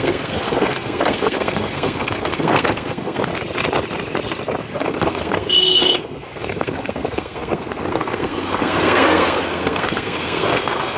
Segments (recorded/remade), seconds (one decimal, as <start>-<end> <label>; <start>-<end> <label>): 0.0-3.3 remade; 3.3-4.6 recorded; 4.6-11.0 remade